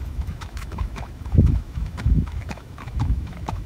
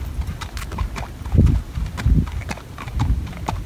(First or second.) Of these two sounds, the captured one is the second